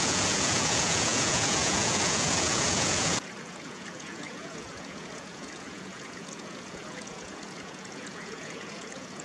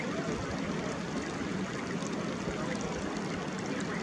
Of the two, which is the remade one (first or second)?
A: first